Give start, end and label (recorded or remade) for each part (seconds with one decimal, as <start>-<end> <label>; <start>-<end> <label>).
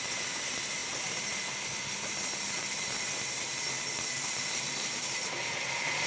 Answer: 0.0-6.1 recorded